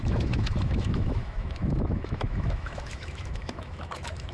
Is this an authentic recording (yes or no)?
no